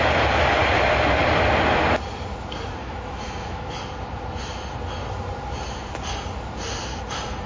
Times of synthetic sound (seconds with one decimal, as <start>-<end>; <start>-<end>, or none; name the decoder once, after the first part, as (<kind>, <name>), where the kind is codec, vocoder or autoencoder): 2.8-3.7 (autoencoder, DAC-VAE)